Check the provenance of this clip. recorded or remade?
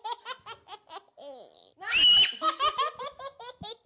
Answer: recorded